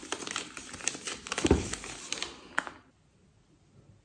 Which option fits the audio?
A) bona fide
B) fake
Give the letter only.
A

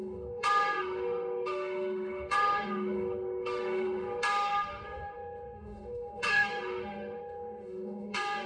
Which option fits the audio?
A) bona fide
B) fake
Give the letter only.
B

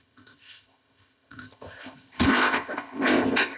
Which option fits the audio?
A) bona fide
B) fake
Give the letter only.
B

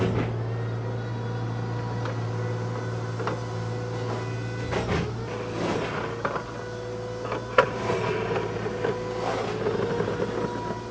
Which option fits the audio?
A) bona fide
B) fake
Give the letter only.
A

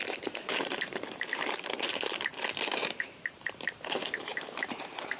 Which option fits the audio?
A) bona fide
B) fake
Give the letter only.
B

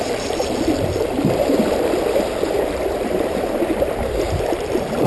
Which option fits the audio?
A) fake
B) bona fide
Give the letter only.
B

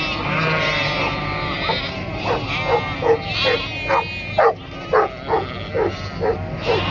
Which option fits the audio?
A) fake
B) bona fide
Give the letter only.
B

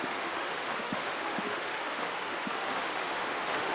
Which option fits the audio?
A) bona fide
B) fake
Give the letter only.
B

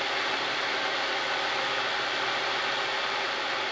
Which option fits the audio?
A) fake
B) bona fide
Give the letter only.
B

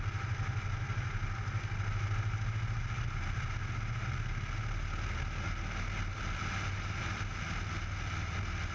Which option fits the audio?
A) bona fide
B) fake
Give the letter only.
A